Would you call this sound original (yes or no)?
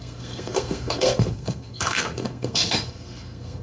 no